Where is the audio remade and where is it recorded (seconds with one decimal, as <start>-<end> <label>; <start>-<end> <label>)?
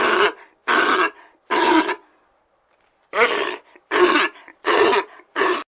0.0-4.5 recorded; 4.5-5.2 remade; 5.2-5.8 recorded